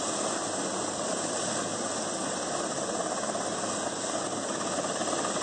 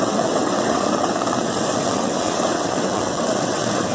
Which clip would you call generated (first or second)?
second